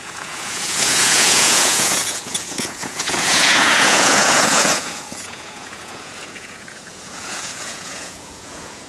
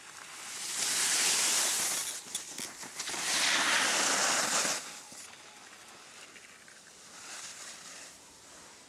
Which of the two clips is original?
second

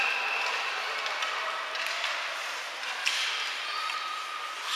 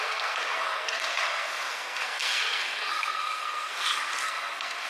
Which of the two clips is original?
first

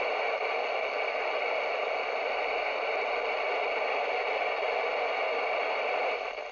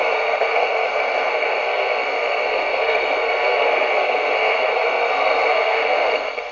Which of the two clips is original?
first